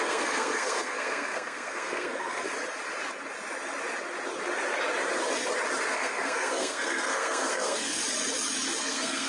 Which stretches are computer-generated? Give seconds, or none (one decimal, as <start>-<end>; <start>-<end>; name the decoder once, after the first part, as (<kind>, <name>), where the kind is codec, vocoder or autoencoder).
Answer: 0.0-2.4 (codec, SNAC); 5.9-8.0; 8.8-9.3